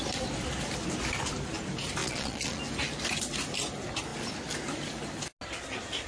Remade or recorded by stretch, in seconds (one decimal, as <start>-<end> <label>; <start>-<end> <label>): 0.0-2.0 recorded; 2.0-2.6 remade; 2.6-6.1 recorded